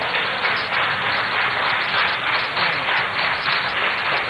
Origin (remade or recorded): remade